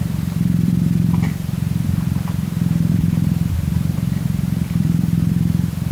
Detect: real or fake fake